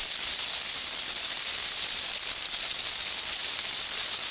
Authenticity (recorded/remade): recorded